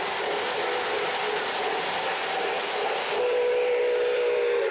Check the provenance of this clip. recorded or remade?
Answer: recorded